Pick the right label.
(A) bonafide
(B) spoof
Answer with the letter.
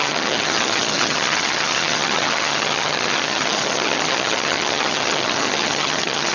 B